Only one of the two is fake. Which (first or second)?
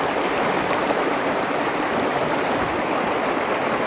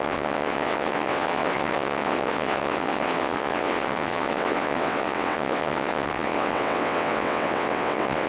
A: second